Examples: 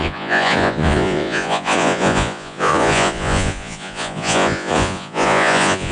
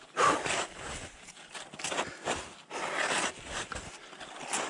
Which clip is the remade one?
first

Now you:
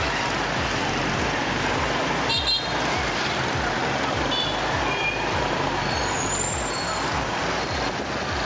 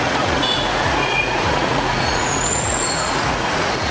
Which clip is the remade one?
second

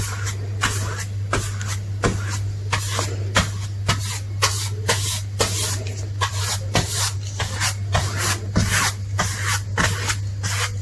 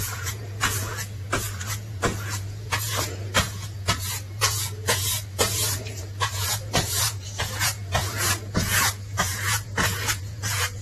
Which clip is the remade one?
second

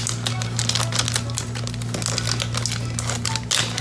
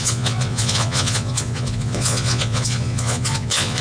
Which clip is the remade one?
second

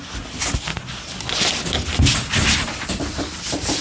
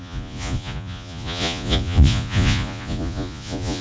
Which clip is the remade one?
second